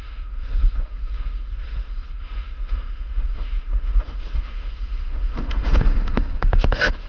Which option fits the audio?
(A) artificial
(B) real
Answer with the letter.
A